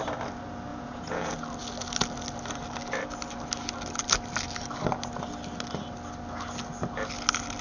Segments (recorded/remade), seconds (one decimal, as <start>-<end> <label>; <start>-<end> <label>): 0.0-0.7 recorded; 0.7-1.3 remade; 1.3-7.6 recorded